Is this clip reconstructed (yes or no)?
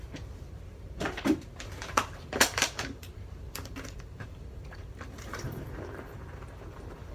yes